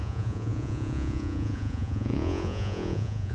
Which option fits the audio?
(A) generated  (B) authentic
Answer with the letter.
A